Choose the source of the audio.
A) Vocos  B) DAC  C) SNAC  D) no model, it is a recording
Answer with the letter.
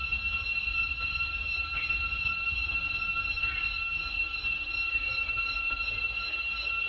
D